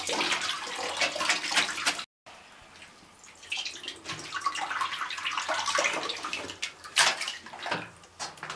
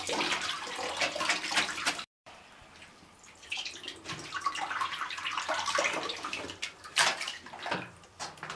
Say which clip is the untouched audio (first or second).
first